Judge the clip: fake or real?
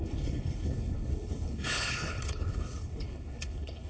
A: fake